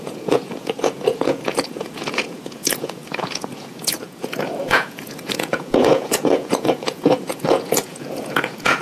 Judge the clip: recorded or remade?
remade